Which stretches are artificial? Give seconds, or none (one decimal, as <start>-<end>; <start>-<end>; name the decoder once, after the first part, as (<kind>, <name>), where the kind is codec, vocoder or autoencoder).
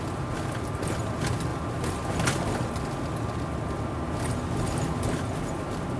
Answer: none